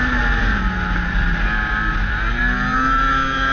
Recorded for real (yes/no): yes